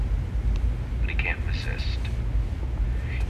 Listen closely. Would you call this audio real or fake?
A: real